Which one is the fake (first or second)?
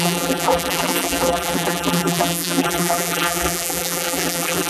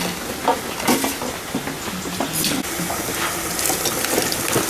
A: first